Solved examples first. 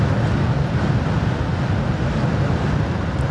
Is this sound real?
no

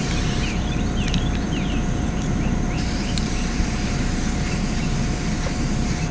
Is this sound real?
no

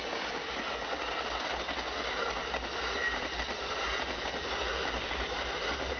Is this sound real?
yes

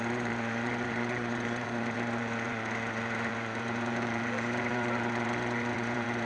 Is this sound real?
no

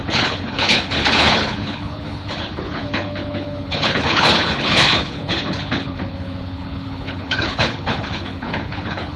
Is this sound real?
no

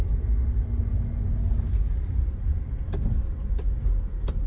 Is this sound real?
yes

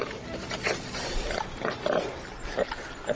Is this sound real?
yes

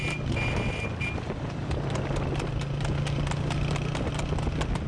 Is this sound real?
yes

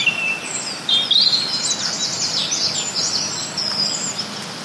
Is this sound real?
yes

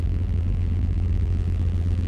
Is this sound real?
no